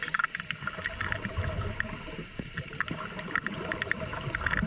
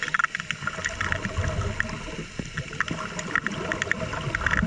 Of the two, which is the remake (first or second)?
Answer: first